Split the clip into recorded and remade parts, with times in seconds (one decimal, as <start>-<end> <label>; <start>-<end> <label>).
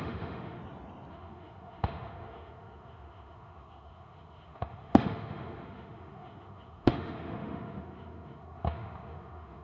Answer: 0.0-0.6 remade; 0.6-1.1 recorded; 1.1-9.6 remade